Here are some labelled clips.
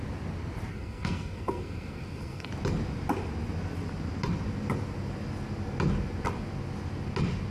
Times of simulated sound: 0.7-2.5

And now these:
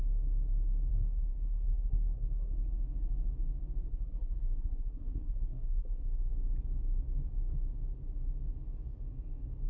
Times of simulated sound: 0.9-2.5; 3.9-6.3

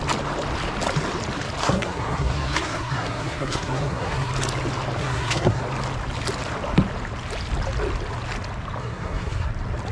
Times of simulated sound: 1.6-4.3; 5.0-5.6; 8.8-9.5

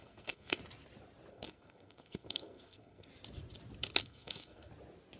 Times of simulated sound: 0.0-0.6; 1.3-3.1; 4.0-4.7

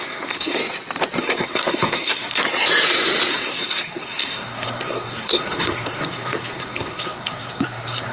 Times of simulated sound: 0.0-0.6; 1.2-2.4; 3.3-8.1

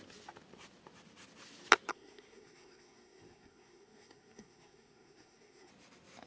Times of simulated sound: 1.9-5.7